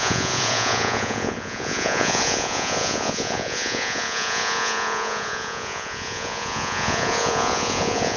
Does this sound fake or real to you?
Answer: fake